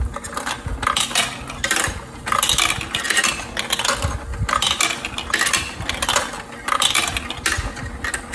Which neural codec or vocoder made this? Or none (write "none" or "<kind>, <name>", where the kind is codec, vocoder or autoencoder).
none